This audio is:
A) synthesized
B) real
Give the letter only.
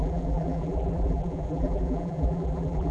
A